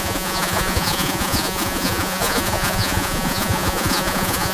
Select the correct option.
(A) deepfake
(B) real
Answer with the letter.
A